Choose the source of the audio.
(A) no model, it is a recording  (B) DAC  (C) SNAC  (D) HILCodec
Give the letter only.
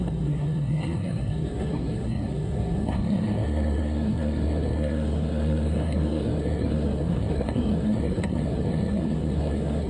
C